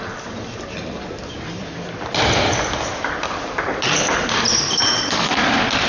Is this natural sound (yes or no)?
no